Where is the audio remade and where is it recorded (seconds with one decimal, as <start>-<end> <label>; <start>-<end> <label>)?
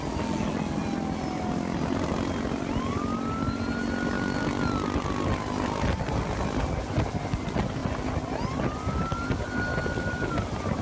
0.0-10.8 recorded